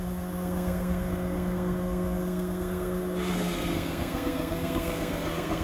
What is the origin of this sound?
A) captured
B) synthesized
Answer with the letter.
B